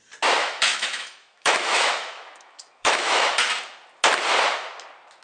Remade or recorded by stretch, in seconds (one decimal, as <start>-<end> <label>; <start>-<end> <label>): 0.0-0.4 recorded; 0.4-3.5 remade; 3.5-5.2 recorded